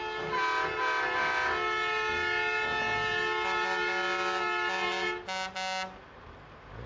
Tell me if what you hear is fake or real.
real